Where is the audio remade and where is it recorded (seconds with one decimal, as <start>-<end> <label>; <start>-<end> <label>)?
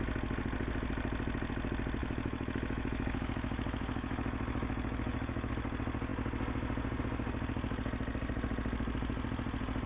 0.0-2.0 recorded; 2.0-5.5 remade; 5.5-9.9 recorded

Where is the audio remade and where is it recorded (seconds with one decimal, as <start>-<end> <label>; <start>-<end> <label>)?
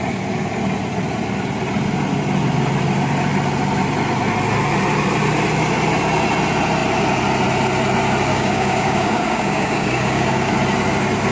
0.0-8.3 recorded; 8.3-10.5 remade; 10.5-11.3 recorded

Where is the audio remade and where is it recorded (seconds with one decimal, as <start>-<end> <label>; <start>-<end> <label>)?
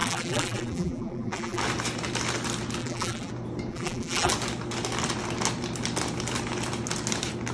0.0-1.6 remade; 1.6-2.8 recorded; 2.8-3.3 remade; 3.3-3.7 recorded; 3.7-4.3 remade; 4.3-7.5 recorded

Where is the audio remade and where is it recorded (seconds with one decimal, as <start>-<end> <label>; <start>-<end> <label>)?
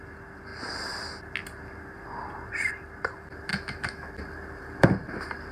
0.0-3.5 recorded; 3.5-4.1 remade; 4.1-5.5 recorded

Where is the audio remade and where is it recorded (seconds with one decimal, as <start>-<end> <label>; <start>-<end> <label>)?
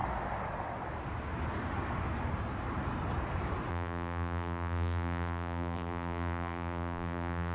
0.0-3.7 recorded; 3.7-7.5 remade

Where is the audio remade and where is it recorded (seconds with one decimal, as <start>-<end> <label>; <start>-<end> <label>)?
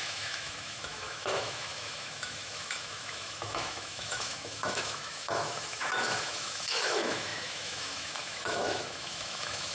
0.0-9.7 remade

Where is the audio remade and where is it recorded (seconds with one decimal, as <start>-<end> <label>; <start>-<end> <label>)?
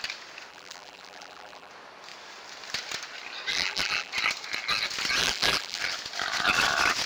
0.0-0.5 recorded; 0.5-1.7 remade; 1.7-3.5 recorded; 3.5-4.1 remade; 4.1-5.2 recorded; 5.2-5.8 remade; 5.8-7.1 recorded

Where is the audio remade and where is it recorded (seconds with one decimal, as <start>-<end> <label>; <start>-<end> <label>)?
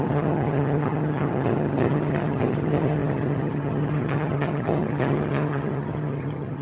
0.0-6.6 remade